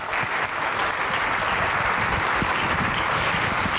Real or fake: real